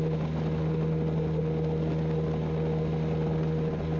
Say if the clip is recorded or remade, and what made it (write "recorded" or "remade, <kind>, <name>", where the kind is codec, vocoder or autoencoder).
recorded